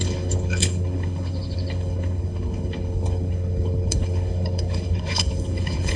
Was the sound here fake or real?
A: fake